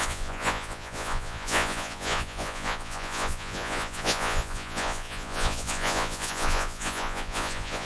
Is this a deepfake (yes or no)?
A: yes